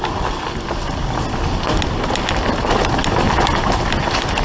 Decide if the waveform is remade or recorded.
recorded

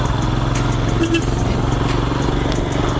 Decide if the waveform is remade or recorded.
recorded